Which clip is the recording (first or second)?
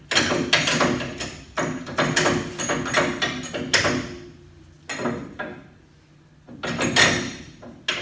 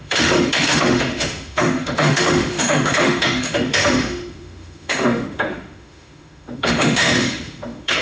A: first